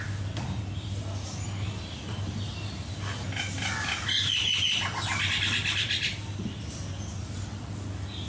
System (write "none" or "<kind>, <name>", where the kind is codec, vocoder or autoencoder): vocoder, BigVGAN v2